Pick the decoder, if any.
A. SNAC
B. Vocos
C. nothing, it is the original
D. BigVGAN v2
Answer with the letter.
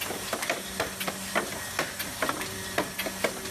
C